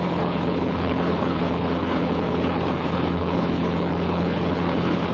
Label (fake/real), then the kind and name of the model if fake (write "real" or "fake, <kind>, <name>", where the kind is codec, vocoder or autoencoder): fake, codec, HILCodec